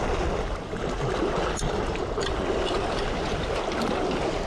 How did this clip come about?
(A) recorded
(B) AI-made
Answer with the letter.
A